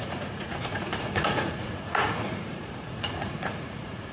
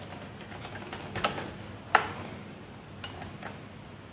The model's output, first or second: first